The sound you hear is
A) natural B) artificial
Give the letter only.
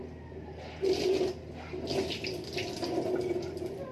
A